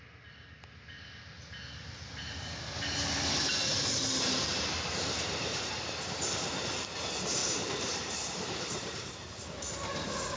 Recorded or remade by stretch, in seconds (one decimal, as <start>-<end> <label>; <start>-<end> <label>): 0.0-4.5 recorded; 4.5-6.5 remade; 6.5-7.4 recorded; 7.4-9.1 remade; 9.1-10.4 recorded